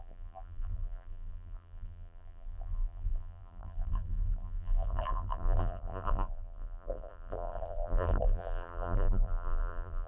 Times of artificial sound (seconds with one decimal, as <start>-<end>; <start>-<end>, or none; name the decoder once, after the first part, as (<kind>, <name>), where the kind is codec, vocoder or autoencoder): 0.0-10.1 (vocoder, BigVGAN v2)